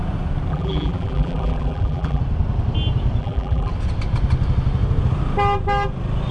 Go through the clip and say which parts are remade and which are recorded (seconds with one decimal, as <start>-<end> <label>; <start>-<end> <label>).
0.0-0.5 recorded; 0.5-2.2 remade; 2.2-3.2 recorded; 3.2-3.7 remade; 3.7-6.3 recorded